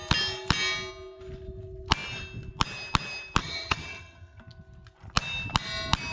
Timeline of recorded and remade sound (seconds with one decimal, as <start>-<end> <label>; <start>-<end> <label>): 0.0-3.4 recorded; 3.4-4.4 remade; 4.4-6.1 recorded